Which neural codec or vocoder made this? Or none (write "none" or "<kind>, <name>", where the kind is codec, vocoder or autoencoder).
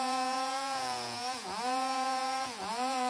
vocoder, Vocos